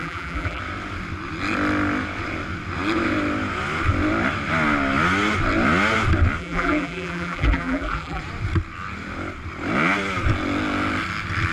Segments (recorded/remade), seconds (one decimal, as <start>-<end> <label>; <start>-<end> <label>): 0.0-0.6 remade; 0.6-6.4 recorded; 6.4-8.2 remade; 8.2-11.5 recorded